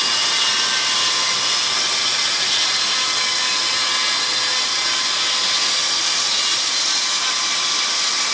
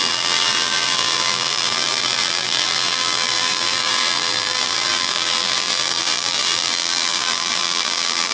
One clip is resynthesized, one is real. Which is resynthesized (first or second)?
second